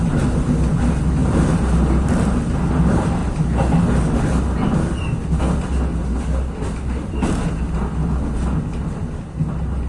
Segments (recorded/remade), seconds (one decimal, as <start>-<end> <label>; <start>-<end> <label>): 0.0-9.9 recorded